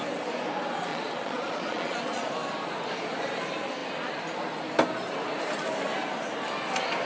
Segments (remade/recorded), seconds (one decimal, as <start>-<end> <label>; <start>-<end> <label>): 0.0-0.9 recorded; 0.9-2.2 remade; 2.2-7.1 recorded